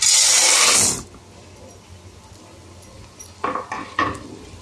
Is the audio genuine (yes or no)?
yes